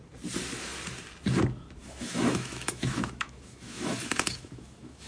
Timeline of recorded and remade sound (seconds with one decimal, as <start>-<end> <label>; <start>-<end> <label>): 0.0-1.8 recorded; 1.8-5.1 remade